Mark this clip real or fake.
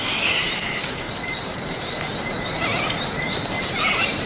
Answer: fake